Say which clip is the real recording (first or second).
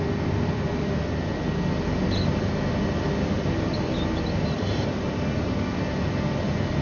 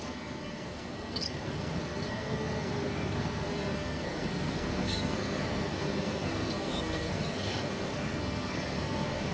first